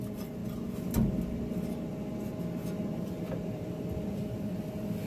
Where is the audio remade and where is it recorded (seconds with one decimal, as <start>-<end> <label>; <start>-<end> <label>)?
0.0-0.4 remade; 0.4-3.5 recorded; 3.5-5.1 remade